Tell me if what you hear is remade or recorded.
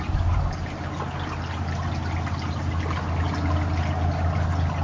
recorded